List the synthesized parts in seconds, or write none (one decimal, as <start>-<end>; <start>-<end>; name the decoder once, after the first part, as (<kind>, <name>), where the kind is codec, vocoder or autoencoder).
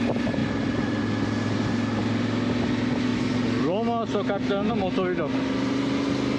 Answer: 0.4-1.0 (vocoder, BigVGAN v2); 3.1-4.7